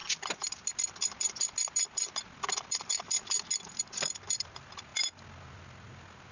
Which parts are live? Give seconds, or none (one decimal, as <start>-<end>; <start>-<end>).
0.0-6.3